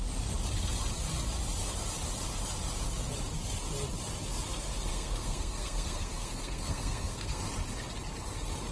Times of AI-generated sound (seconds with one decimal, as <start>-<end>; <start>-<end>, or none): 4.9-7.4